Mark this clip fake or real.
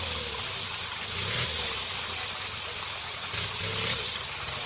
real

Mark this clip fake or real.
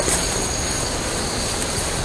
real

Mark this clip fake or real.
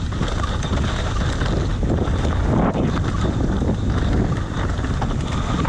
real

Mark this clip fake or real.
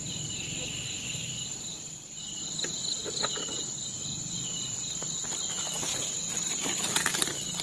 real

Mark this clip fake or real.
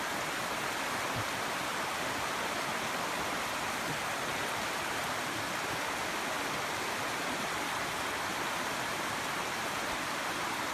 real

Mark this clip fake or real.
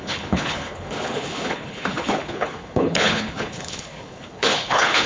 fake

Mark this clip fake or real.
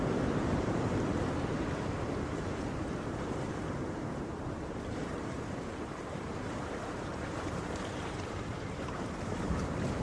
fake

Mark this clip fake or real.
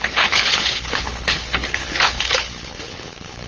fake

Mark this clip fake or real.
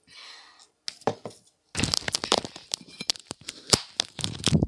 real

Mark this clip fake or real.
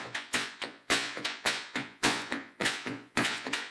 fake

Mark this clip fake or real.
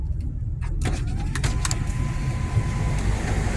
real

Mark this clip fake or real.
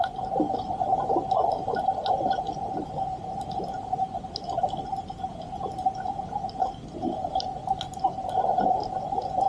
real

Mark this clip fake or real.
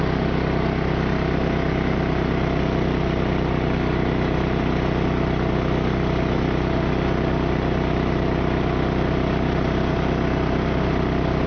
real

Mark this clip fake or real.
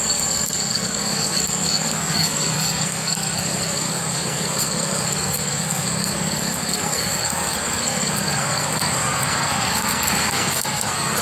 fake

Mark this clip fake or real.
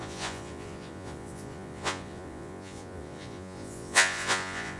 fake